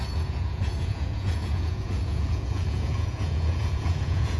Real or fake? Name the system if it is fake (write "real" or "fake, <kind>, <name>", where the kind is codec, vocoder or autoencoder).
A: fake, vocoder, Vocos